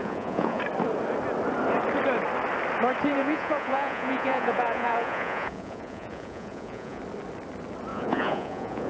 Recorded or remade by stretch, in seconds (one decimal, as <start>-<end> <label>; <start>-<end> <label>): 0.0-0.6 remade; 0.6-3.2 recorded; 3.2-7.0 remade; 7.0-7.9 recorded; 7.9-8.9 remade